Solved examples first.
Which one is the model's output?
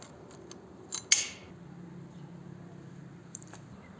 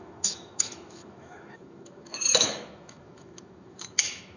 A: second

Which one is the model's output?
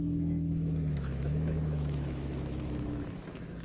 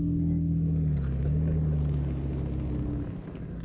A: first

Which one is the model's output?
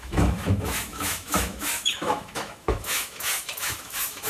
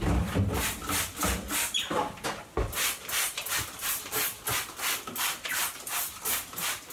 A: first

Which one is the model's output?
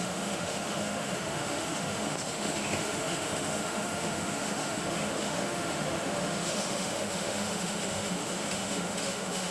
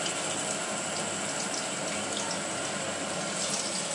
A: first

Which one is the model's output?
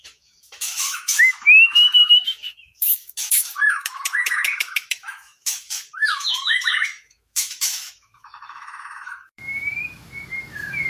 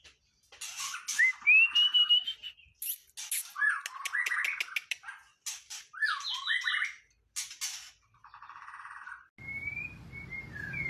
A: first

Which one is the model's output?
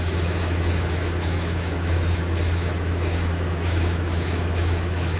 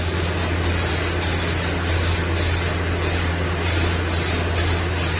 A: first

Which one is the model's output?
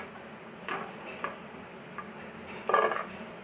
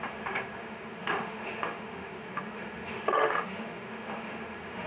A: second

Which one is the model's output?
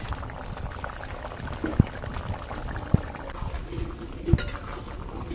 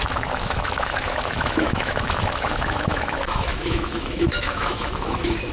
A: second